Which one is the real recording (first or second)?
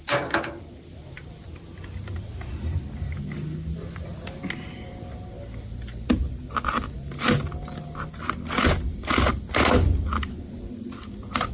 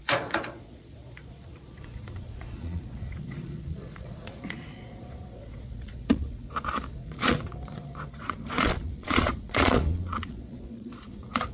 first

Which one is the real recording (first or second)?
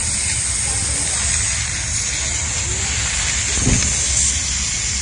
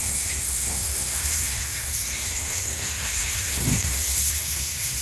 first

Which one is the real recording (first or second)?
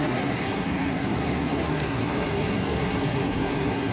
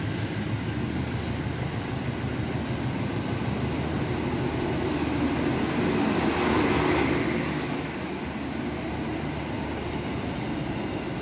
second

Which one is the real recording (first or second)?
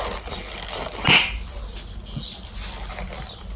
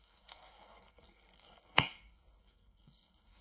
first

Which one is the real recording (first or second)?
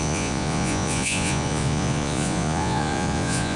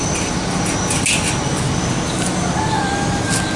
second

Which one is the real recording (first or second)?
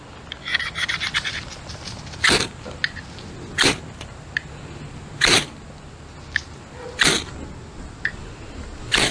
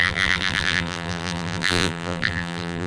first